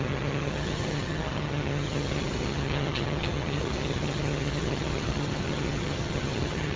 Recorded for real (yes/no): no